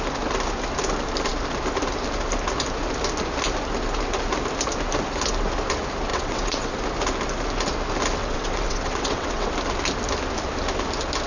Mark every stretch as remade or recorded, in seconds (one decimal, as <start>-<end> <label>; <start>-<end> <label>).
0.0-6.1 recorded; 6.1-6.7 remade; 6.7-8.2 recorded; 8.2-9.5 remade; 9.5-11.3 recorded